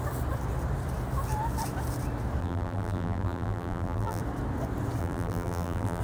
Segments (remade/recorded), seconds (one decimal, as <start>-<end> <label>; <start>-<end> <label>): 0.0-2.4 recorded; 2.4-4.2 remade; 4.2-5.0 recorded; 5.0-6.0 remade